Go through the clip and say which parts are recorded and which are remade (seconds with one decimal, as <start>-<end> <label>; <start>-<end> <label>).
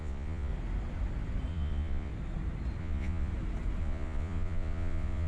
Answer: 0.0-0.5 remade; 0.5-1.5 recorded; 1.5-2.1 remade; 2.1-2.8 recorded; 2.8-3.3 remade; 3.3-3.8 recorded; 3.8-5.3 remade